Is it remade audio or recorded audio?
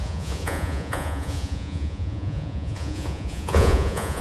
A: remade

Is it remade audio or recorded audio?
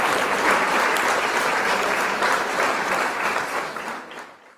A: remade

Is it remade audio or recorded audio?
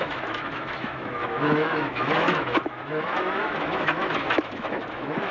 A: remade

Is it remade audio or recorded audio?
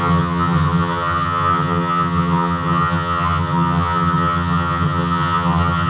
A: remade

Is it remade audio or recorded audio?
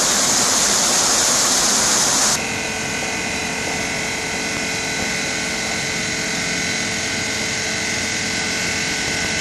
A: recorded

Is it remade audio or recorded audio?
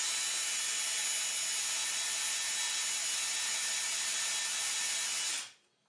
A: recorded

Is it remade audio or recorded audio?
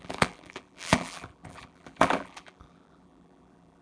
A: remade